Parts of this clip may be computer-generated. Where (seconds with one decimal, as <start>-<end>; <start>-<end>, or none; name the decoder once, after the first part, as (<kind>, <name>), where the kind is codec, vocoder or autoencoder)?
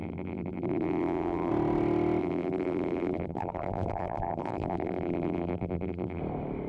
0.0-1.5 (vocoder, BigVGAN v2); 2.2-6.2